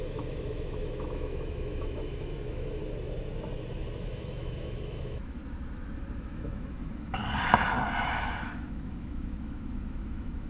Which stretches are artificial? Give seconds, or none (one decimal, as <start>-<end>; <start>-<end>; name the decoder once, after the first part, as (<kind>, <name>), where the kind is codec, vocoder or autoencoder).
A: 0.0-2.8 (autoencoder, DAC-VAE); 4.1-5.4; 6.2-7.2; 8.0-10.5